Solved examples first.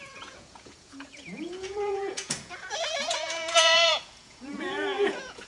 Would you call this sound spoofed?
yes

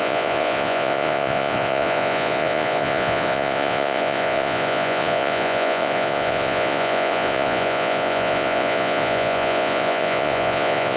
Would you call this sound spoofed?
yes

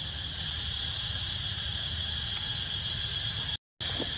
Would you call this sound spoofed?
no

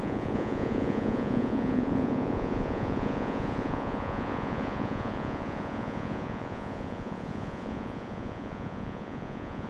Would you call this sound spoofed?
yes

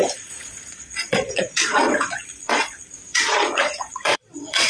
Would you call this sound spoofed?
yes